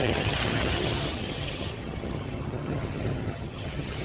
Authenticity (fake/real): fake